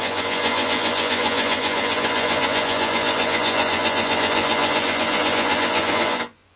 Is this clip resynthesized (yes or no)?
yes